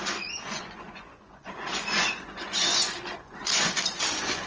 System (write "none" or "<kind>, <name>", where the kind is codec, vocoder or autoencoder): vocoder, Vocos